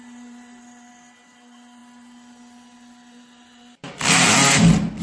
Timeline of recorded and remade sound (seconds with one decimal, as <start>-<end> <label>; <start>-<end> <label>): 0.0-5.0 recorded